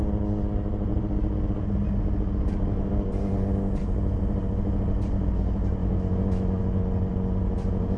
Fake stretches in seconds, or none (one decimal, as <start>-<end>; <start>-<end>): 5.8-6.6; 7.4-8.0